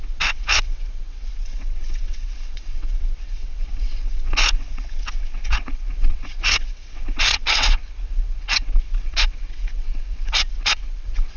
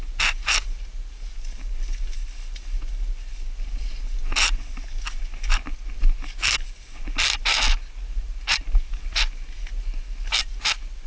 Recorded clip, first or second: second